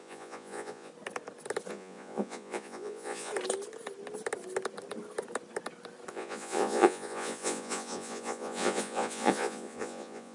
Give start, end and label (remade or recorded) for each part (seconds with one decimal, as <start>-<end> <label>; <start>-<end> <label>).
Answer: 0.0-0.9 remade; 0.9-1.7 recorded; 1.7-3.3 remade; 3.3-6.1 recorded; 6.1-10.3 remade